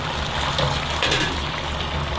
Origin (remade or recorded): recorded